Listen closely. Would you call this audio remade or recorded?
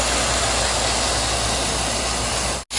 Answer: recorded